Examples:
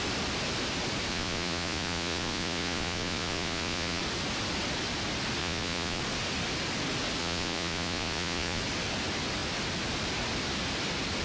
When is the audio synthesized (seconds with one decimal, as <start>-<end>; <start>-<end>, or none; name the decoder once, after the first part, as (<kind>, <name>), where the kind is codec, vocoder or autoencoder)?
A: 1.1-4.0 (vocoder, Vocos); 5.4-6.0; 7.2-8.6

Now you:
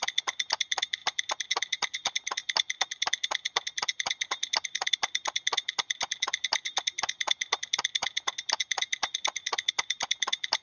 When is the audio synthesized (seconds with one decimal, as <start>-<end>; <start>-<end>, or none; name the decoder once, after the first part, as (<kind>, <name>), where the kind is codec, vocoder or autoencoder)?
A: none

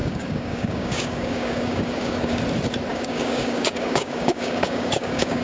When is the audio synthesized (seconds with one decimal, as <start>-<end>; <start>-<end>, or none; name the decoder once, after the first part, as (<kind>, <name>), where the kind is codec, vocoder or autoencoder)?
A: 0.0-2.4 (codec, DAC); 2.9-5.4

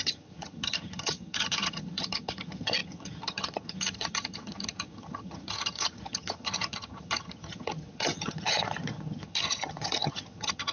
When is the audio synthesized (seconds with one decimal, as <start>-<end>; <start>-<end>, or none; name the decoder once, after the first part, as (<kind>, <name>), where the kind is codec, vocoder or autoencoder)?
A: 0.0-10.7 (vocoder, HiFi-GAN)

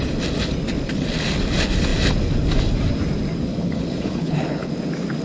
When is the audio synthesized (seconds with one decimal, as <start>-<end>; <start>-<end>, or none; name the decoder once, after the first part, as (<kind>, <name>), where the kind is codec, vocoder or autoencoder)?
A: 3.5-4.7 (codec, HILCodec)

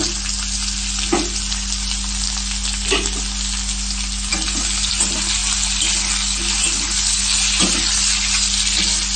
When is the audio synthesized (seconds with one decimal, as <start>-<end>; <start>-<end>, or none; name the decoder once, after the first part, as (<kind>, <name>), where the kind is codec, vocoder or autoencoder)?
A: none

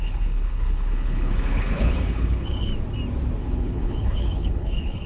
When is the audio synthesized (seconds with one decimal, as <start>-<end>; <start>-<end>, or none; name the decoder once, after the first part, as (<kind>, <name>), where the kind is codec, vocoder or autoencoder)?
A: 0.0-2.7 (codec, HILCodec); 3.4-5.1

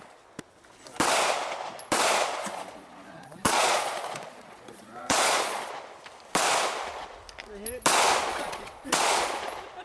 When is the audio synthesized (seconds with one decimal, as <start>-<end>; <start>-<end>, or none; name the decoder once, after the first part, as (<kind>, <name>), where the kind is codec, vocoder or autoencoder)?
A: 2.4-5.7 (vocoder, Vocos); 8.3-9.4